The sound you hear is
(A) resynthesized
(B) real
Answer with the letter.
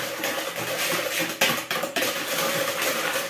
B